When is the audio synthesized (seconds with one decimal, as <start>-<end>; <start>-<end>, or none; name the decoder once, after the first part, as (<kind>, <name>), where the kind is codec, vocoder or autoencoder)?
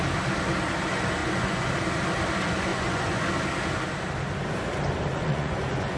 1.2-1.7 (vocoder, Vocos); 2.7-3.2; 5.1-6.0